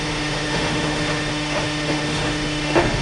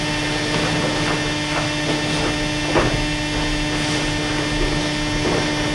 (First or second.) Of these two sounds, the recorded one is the second